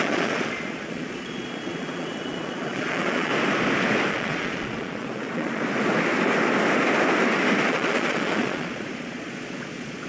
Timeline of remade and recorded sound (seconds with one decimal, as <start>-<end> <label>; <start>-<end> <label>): 0.0-3.3 remade; 3.3-4.1 recorded; 4.1-5.6 remade; 5.6-7.7 recorded; 7.7-10.1 remade